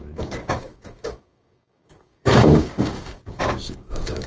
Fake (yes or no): yes